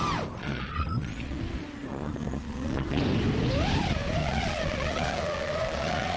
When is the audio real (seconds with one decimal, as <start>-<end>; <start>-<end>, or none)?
0.0-0.4; 1.4-1.9; 3.0-4.2